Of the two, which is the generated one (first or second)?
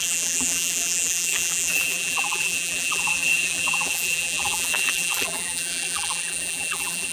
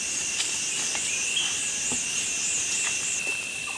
first